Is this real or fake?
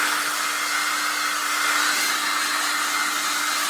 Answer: real